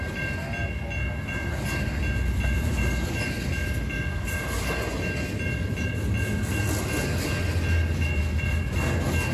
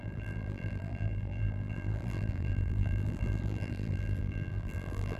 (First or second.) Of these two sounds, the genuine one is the first